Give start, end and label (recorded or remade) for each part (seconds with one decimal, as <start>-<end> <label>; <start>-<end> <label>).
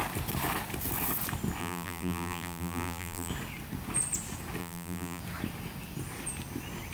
0.0-1.6 recorded; 1.6-3.3 remade; 3.3-4.6 recorded; 4.6-5.2 remade; 5.2-6.9 recorded